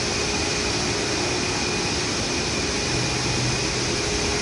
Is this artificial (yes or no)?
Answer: no